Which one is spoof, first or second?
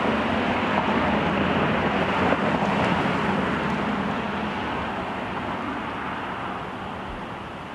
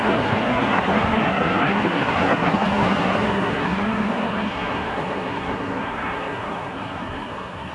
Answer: second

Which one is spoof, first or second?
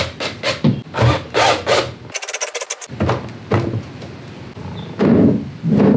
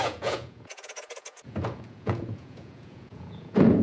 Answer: second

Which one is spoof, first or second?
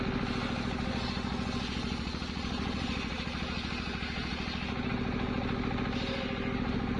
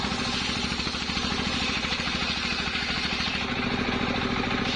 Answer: second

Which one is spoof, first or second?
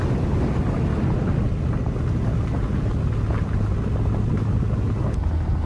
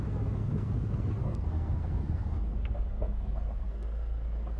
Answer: second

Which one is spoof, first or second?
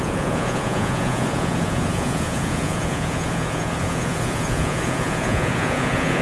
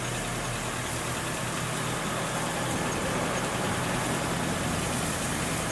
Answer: first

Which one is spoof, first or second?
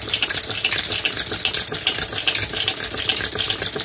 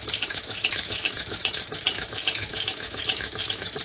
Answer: second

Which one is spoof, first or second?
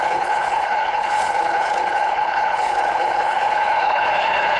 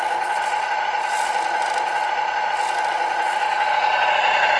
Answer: first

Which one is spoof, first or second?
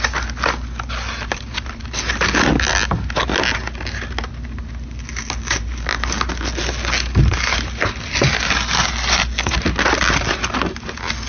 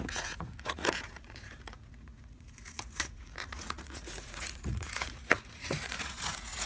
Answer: second